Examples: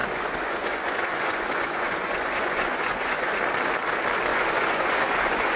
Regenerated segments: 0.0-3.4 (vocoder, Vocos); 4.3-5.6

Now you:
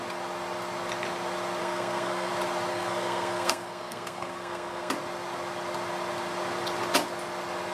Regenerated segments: 1.6-2.3 (codec, SNAC); 2.7-4.9